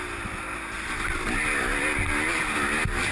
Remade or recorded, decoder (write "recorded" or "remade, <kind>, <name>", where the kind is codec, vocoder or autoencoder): recorded